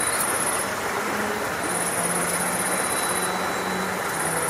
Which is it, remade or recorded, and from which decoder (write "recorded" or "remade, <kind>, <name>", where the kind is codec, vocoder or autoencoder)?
recorded